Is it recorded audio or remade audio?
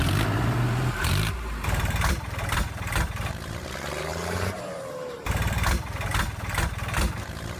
remade